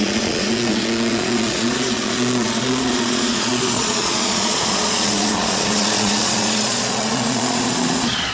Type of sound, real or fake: fake